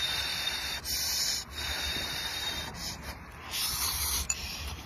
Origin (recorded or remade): remade